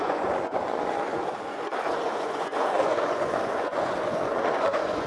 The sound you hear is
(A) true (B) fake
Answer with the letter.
B